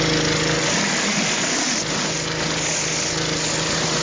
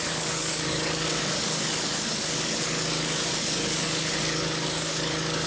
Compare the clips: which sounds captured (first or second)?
first